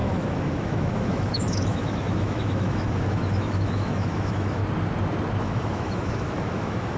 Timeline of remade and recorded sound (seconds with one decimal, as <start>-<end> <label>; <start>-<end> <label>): 0.0-4.6 remade; 4.6-5.4 recorded; 5.4-7.0 remade